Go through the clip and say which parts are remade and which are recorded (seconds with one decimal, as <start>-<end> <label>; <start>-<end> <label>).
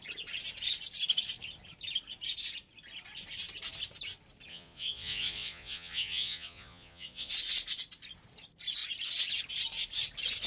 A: 0.0-4.5 recorded; 4.5-7.3 remade; 7.3-10.5 recorded